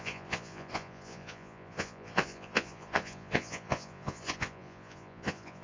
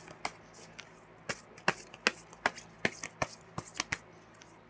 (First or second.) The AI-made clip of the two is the first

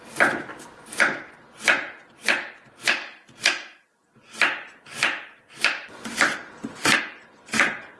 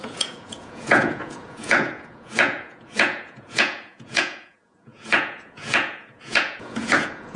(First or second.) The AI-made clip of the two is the second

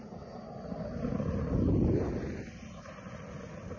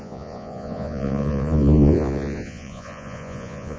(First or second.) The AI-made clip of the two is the second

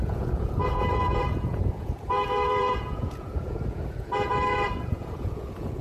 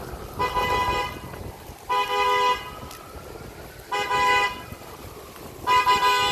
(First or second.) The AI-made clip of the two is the first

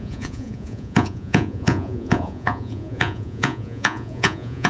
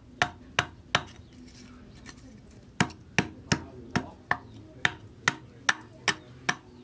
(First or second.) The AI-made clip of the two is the first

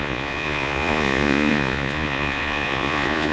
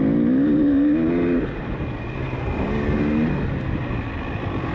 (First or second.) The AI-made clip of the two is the first